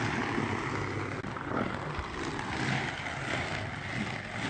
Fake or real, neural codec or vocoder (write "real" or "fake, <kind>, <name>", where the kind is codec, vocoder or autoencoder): real